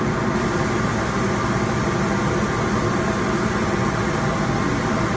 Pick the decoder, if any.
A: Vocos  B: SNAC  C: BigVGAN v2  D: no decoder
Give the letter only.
D